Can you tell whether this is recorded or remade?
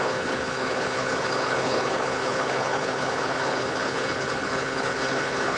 remade